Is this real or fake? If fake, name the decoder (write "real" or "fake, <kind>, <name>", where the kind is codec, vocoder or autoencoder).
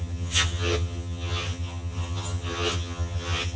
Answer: fake, vocoder, HiFi-GAN